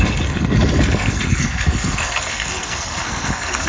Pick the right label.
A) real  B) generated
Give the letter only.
B